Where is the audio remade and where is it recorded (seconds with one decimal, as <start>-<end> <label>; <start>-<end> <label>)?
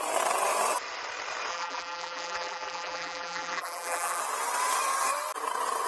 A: 0.0-1.5 recorded; 1.5-4.2 remade; 4.2-5.9 recorded